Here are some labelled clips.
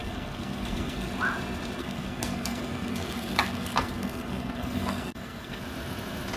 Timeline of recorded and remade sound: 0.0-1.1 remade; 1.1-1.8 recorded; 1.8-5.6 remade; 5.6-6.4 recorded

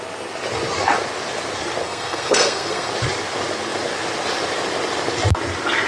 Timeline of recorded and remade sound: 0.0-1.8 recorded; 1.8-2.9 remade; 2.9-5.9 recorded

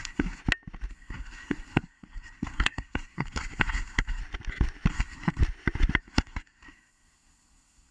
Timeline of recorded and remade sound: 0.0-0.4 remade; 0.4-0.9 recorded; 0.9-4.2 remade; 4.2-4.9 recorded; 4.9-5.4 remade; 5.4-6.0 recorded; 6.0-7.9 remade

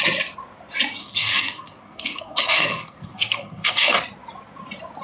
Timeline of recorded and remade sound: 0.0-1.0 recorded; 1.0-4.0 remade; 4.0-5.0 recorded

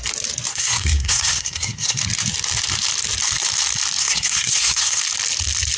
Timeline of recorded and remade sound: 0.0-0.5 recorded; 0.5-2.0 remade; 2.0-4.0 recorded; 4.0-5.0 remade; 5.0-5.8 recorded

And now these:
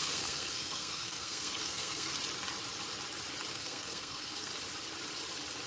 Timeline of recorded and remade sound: 0.0-2.1 remade; 2.1-3.5 recorded; 3.5-4.5 remade; 4.5-5.7 recorded